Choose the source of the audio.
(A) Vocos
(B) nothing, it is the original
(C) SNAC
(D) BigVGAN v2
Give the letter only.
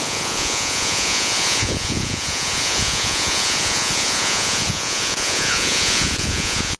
A